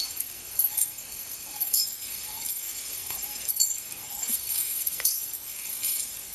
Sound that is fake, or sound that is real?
fake